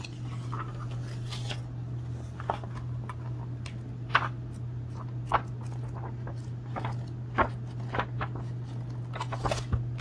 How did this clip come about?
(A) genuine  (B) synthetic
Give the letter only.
A